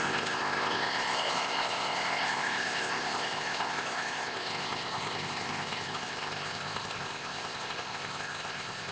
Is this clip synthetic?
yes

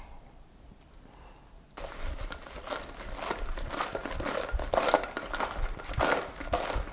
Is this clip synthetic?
no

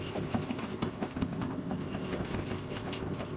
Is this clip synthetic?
yes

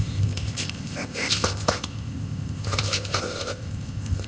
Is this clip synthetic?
yes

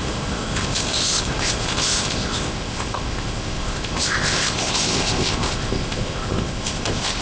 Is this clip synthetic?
yes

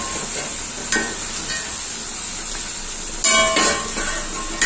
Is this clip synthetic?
no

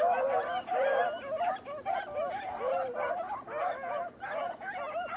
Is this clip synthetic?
no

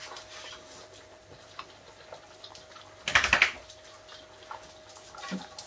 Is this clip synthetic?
no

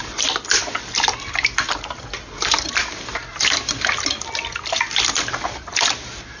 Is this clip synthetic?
no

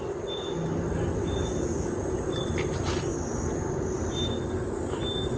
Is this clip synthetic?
no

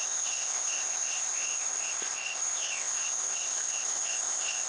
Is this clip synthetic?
yes